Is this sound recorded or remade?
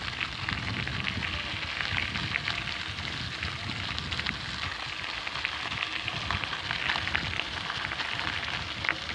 recorded